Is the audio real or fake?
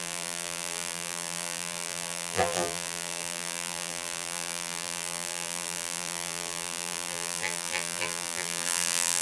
fake